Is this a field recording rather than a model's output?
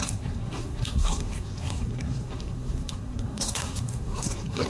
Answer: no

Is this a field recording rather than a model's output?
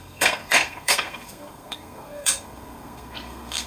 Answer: no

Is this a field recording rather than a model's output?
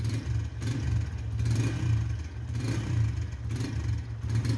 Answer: yes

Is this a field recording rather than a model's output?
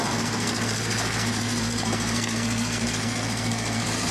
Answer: no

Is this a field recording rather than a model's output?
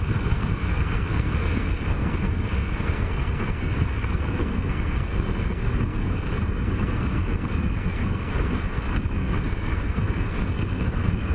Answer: no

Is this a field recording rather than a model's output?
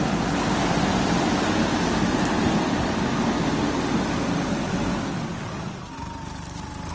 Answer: yes